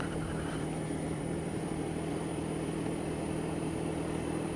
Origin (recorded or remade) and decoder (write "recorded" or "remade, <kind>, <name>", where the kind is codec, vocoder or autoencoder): remade, vocoder, BigVGAN v2